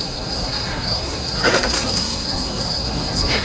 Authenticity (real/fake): fake